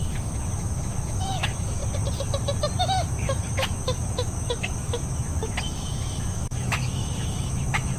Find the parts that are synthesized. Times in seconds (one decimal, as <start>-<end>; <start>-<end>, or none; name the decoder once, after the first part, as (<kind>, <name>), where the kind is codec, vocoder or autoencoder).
0.0-1.8 (autoencoder, DAC-VAE); 2.8-8.0